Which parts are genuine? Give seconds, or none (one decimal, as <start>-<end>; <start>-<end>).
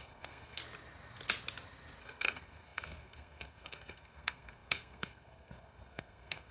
0.6-2.0